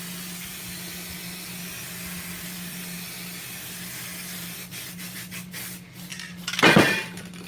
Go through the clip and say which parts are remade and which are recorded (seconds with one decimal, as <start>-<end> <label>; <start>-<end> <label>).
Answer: 0.0-7.5 recorded